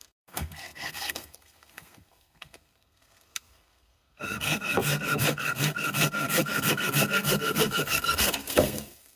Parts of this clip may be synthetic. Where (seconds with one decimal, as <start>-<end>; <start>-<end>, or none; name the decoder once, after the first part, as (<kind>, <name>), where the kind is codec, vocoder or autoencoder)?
0.0-9.2 (codec, SNAC)